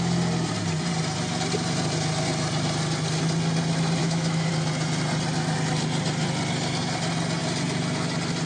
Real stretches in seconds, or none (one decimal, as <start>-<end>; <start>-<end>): 0.0-4.0; 4.5-8.5